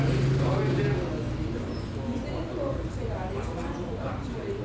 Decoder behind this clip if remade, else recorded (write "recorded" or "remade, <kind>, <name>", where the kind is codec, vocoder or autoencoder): recorded